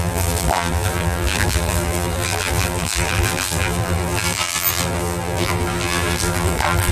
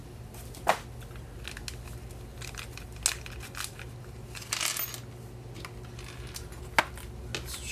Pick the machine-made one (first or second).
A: first